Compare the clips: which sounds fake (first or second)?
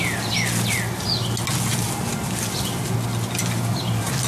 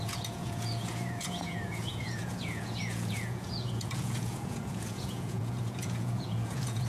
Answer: second